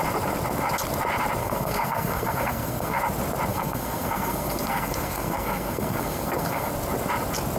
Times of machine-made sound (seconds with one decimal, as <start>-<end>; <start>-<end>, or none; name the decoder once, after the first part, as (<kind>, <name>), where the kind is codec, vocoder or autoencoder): 1.4-3.0 (codec, SNAC); 3.5-6.7